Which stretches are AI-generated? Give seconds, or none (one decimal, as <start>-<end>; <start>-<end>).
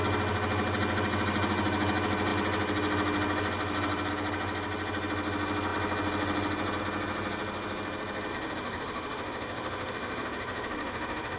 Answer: 8.3-11.4